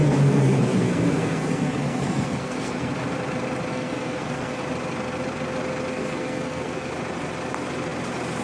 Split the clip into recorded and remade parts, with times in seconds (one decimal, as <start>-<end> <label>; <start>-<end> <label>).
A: 0.0-2.9 remade; 2.9-3.7 recorded; 3.7-4.6 remade; 4.6-5.9 recorded; 5.9-6.9 remade; 6.9-8.4 recorded

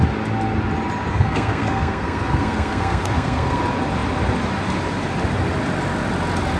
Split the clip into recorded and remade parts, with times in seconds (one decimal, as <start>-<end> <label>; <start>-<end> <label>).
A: 0.0-1.1 recorded; 1.1-3.6 remade; 3.6-6.6 recorded

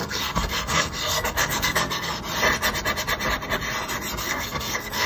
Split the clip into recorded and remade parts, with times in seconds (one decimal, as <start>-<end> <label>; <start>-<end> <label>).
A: 0.0-2.2 remade; 2.2-4.2 recorded; 4.2-5.1 remade

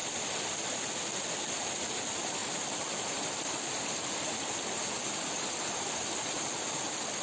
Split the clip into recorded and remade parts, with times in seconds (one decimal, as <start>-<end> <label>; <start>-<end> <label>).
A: 0.0-7.2 recorded

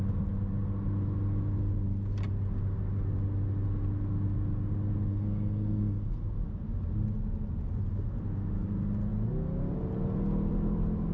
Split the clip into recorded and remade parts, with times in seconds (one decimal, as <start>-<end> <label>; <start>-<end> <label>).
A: 0.0-5.1 recorded; 5.1-6.3 remade; 6.3-11.1 recorded